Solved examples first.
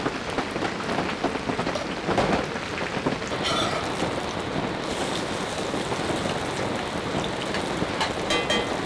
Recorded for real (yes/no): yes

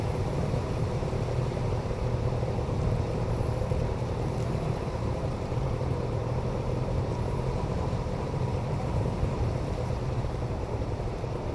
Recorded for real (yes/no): no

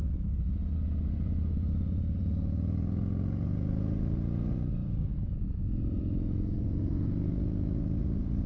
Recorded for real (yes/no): no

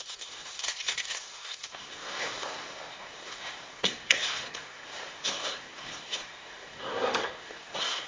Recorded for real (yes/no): no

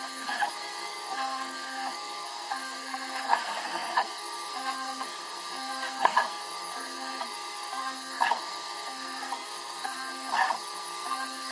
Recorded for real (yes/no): no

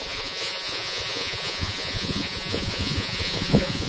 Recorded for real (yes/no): no